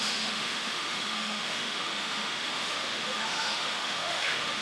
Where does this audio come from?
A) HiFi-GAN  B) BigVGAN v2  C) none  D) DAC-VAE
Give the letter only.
D